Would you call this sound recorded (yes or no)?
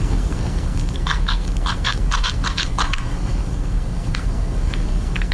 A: no